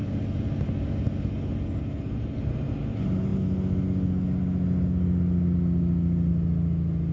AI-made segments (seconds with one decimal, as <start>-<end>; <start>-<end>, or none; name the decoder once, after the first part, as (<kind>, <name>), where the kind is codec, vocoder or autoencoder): none